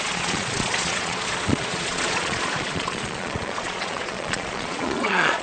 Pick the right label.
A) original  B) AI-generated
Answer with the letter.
B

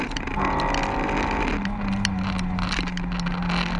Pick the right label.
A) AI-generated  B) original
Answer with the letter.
B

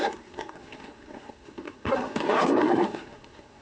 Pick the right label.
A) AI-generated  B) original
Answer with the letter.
A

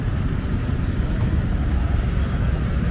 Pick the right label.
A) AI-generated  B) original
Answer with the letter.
B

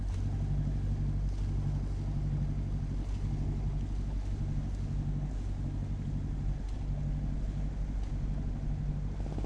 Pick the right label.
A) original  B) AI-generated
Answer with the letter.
A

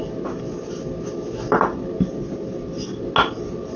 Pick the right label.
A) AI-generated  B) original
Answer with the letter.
B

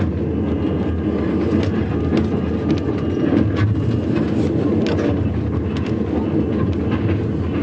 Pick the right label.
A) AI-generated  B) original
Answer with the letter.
B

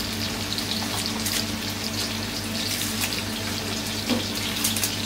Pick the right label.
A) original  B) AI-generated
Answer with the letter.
A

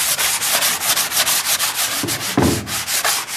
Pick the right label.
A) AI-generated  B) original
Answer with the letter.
B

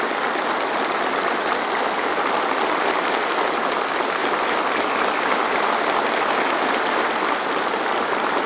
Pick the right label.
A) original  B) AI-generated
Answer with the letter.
A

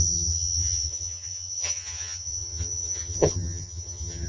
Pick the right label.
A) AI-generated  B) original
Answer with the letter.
A